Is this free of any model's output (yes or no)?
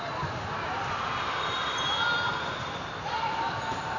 no